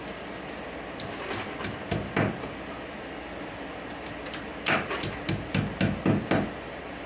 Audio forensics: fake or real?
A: real